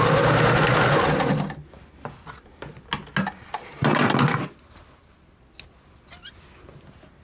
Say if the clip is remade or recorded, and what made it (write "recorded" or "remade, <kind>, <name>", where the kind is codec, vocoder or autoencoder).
recorded